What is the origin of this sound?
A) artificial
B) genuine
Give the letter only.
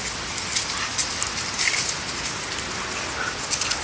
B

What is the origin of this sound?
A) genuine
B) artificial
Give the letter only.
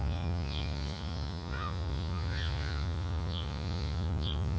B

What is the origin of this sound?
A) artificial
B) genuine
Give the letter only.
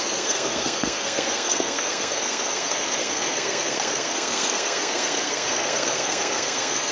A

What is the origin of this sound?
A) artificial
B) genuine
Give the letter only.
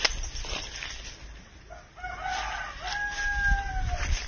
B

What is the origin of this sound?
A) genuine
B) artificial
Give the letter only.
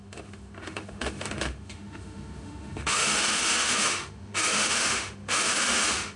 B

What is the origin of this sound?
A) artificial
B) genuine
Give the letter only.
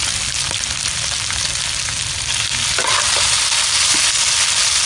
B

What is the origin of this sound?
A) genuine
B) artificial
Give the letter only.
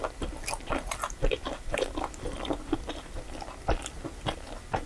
A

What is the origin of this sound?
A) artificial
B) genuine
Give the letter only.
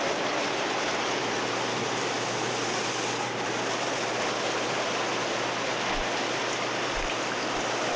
B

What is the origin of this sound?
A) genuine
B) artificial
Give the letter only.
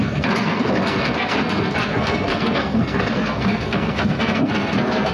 B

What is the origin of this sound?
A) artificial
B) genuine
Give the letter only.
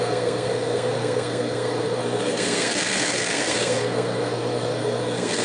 A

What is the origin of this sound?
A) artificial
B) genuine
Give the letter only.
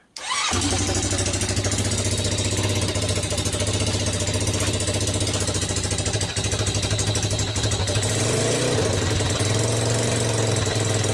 B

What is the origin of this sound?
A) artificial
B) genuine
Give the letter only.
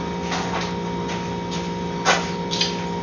B